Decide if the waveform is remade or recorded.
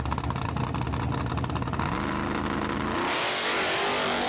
recorded